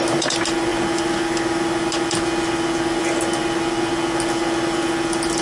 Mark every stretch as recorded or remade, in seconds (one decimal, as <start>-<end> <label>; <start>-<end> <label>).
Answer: 0.0-5.4 recorded